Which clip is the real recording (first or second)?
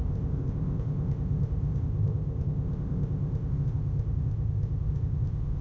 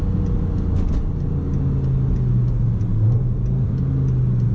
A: second